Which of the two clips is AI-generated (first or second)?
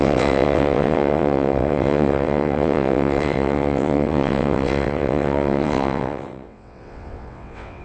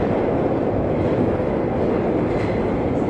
first